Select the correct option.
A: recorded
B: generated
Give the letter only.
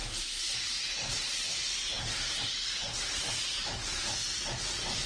B